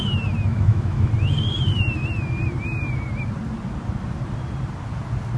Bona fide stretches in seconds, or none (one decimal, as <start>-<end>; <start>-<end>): 0.0-0.5; 1.1-5.4